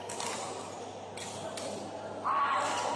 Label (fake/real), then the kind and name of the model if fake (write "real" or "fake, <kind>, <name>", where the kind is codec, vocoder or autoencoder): real